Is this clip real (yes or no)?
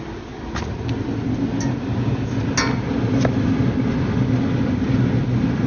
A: yes